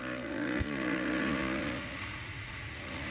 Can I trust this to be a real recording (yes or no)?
no